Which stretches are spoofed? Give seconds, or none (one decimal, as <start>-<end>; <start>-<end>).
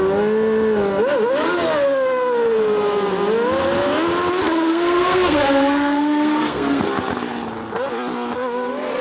4.7-6.8